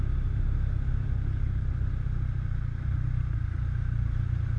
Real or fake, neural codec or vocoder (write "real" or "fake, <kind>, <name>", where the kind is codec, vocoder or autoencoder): real